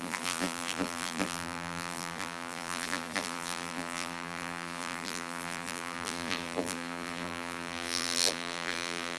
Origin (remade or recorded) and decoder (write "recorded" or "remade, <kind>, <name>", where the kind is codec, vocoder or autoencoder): remade, vocoder, BigVGAN v2